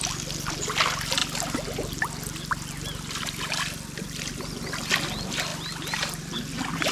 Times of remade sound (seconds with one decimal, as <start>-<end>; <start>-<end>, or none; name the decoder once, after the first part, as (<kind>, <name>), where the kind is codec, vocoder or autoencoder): none